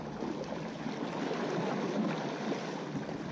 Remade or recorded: recorded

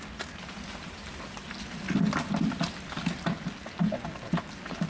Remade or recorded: recorded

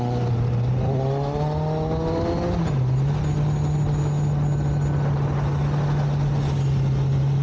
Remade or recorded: recorded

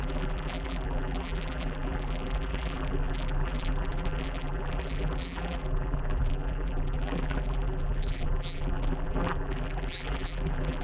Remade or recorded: remade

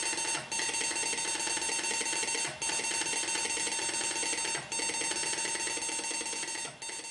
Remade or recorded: recorded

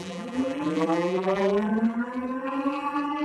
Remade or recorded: remade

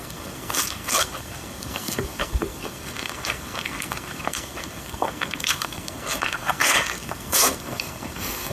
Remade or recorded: remade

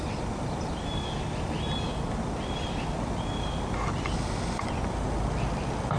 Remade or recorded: recorded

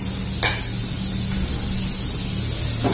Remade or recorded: recorded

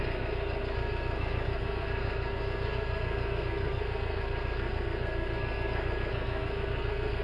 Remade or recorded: remade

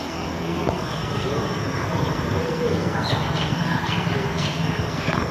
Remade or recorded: remade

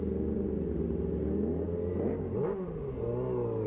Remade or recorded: recorded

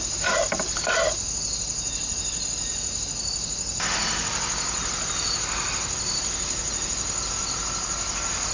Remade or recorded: recorded